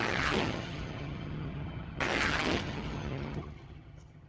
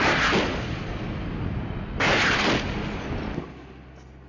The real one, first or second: second